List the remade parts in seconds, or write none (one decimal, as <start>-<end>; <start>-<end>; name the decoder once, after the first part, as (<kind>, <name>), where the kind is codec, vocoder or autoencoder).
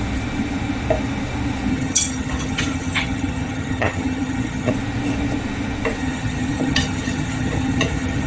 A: 1.7-4.7 (vocoder, HiFi-GAN); 6.0-8.3